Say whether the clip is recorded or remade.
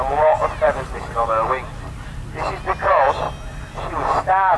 recorded